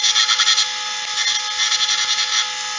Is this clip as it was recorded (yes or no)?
yes